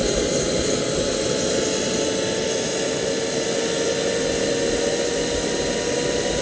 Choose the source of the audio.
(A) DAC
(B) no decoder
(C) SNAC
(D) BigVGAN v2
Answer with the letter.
B